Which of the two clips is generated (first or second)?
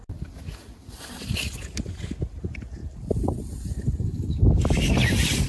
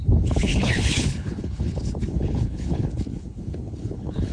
second